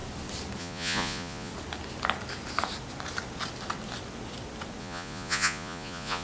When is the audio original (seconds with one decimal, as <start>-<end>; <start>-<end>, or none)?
0.0-0.6; 1.5-4.8